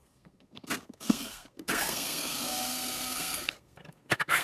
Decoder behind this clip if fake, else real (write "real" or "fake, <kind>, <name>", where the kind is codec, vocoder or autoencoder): fake, codec, SNAC